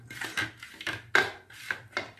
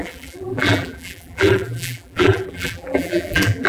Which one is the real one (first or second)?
first